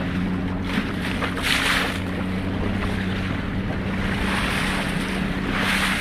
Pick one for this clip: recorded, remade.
recorded